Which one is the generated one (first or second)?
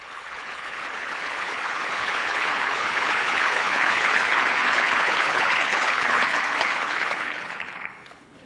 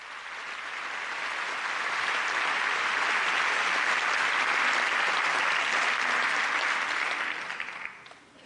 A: first